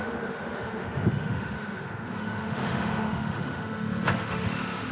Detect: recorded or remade remade